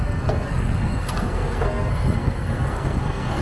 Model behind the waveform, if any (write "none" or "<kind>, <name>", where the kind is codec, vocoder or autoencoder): codec, SNAC